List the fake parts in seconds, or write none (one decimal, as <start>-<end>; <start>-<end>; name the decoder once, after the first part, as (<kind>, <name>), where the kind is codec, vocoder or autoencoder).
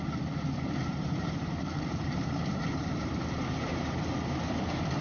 0.9-3.9 (vocoder, BigVGAN v2)